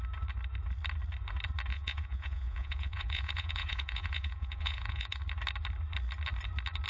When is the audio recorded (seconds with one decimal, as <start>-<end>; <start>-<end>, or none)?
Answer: 0.0-1.7; 5.2-6.9